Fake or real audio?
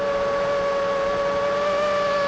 real